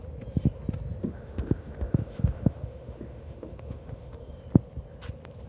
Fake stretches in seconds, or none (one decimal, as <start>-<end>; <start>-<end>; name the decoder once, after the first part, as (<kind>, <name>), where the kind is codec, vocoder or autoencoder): 1.0-4.3 (autoencoder, DAC-VAE)

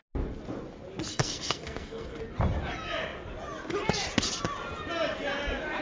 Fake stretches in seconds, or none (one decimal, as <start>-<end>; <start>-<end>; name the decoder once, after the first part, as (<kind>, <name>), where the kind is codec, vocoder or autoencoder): 1.1-2.2 (codec, SNAC)

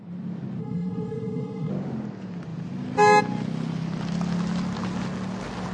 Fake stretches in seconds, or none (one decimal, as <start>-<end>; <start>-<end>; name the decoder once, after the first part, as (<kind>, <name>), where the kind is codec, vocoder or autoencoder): 0.6-1.7 (codec, SNAC)

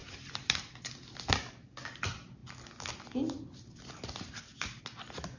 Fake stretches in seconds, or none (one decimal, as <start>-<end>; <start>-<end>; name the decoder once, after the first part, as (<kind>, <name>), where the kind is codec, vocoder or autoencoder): none

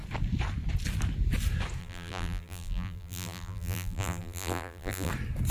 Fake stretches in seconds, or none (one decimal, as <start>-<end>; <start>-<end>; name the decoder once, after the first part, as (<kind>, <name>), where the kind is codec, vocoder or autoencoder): 1.8-5.1 (vocoder, BigVGAN v2)